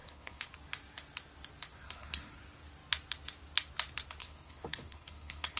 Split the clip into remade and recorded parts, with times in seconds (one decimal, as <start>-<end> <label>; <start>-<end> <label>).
0.0-0.5 remade; 0.5-1.7 recorded; 1.7-2.4 remade; 2.4-4.2 recorded; 4.2-5.6 remade